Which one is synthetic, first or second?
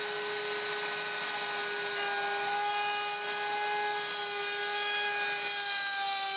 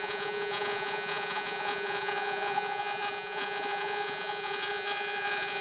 second